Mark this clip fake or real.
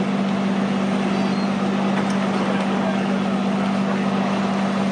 real